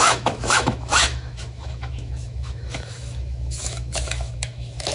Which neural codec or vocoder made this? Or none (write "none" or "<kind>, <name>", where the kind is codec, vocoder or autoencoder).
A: autoencoder, DAC-VAE